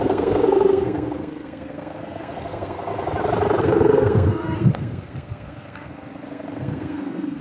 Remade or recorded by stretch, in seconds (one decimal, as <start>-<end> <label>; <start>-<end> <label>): 0.0-2.9 remade; 2.9-3.6 recorded; 3.6-7.4 remade